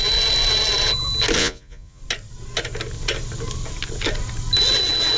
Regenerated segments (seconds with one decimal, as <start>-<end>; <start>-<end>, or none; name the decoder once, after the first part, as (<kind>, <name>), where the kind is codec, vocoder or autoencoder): 1.4-2.0 (vocoder, Vocos)